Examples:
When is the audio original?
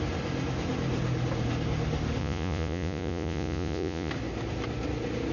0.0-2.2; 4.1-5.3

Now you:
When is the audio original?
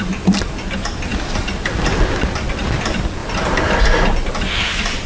0.0-5.1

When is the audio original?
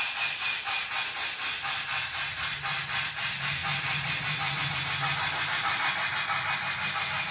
0.0-7.3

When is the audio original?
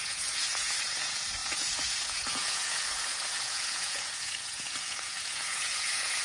none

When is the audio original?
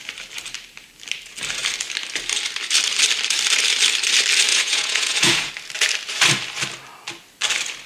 0.0-4.5; 5.5-7.9